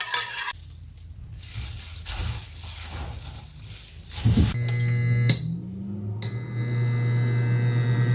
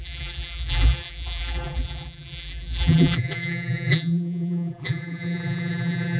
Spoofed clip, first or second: second